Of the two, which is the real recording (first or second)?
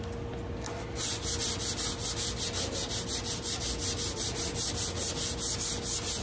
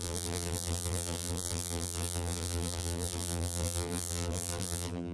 first